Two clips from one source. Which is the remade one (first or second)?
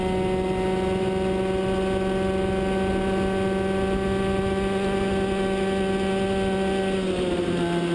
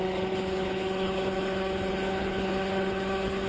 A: second